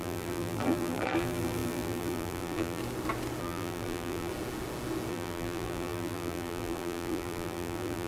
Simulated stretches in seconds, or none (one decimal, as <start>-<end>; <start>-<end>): 0.0-2.8; 3.4-4.3; 5.1-8.1